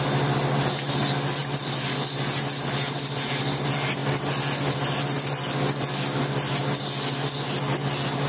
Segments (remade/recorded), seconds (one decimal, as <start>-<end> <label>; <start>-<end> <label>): 0.0-8.3 recorded